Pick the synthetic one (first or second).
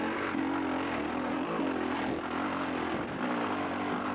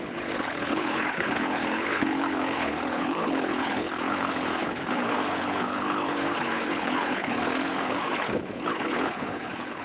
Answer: second